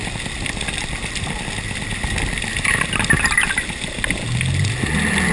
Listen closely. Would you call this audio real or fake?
real